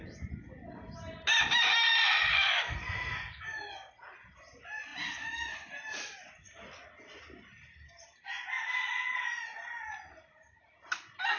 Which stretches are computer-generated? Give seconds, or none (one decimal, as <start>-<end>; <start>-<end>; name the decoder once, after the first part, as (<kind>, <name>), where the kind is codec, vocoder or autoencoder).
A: none